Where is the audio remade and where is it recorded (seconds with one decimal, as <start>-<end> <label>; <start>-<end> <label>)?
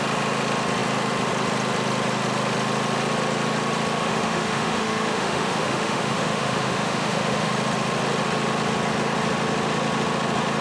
0.0-4.0 recorded; 4.0-7.5 remade; 7.5-10.6 recorded